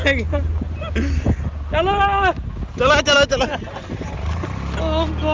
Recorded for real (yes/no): yes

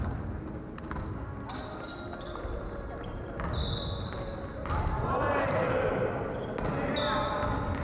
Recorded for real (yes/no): yes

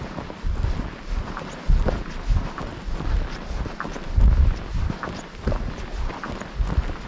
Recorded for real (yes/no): yes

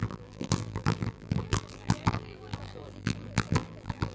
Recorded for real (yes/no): no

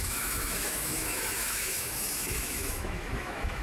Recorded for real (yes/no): no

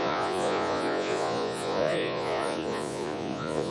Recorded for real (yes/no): no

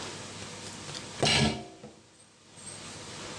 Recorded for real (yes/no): yes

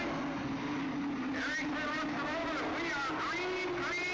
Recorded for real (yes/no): yes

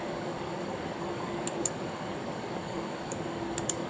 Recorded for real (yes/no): no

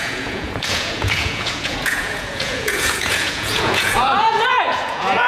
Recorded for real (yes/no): no